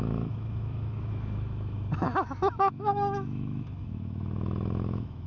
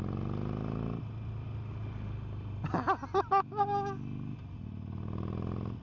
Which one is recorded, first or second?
second